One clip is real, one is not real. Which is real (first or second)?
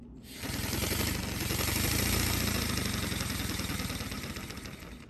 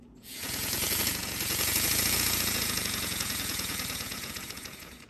first